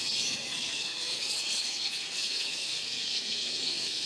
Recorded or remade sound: remade